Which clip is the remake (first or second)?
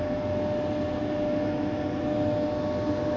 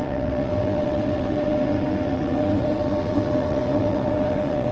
second